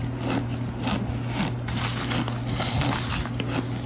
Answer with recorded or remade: recorded